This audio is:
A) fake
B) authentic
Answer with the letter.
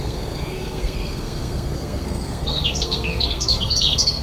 A